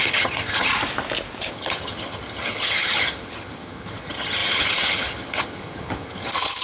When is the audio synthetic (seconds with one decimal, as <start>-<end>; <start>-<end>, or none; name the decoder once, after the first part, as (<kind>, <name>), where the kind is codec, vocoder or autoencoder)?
0.0-0.7 (vocoder, HiFi-GAN); 1.5-6.6